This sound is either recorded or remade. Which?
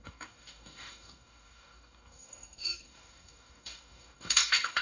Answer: remade